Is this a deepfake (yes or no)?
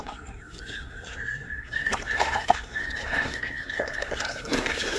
yes